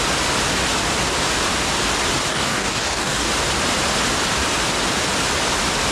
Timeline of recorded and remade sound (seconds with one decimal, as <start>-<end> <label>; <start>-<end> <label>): 0.0-2.3 recorded; 2.3-3.3 remade; 3.3-5.9 recorded